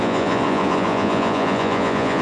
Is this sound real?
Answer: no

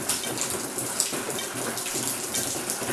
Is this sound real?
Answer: yes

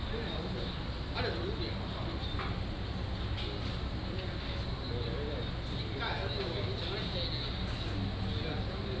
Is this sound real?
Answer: yes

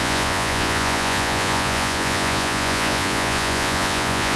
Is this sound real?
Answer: no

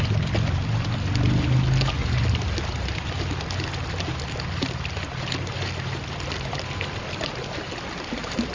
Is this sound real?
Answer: yes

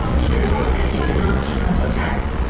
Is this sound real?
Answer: no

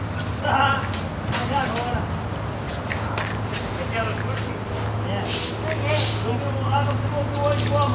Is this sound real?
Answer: yes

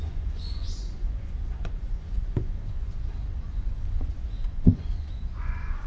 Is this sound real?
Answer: no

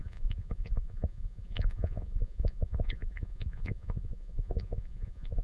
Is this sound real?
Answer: no